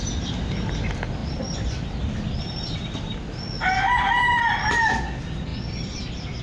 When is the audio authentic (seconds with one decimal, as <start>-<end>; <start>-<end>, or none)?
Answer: 0.0-6.4